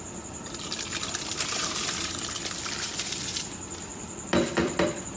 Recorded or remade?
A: remade